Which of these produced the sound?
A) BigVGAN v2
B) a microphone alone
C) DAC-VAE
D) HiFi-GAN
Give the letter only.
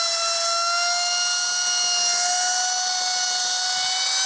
B